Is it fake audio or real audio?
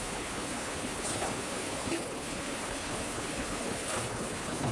fake